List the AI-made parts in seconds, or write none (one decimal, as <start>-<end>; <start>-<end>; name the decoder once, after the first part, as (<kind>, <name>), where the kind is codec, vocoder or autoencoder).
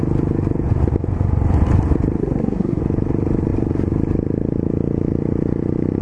2.2-2.8 (codec, SNAC)